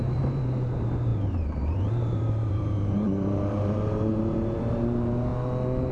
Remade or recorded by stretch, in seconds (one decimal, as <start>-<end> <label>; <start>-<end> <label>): 0.0-5.3 remade; 5.3-5.9 recorded